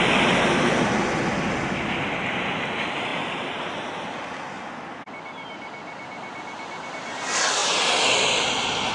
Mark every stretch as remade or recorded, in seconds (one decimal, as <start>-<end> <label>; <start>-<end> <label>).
0.0-8.9 recorded